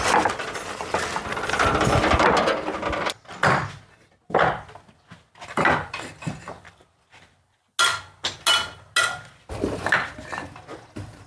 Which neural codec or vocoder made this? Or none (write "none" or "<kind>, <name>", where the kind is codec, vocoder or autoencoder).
none